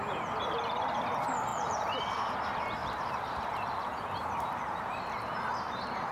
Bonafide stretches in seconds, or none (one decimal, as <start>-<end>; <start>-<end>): 0.0-1.5; 2.1-2.8; 5.6-6.1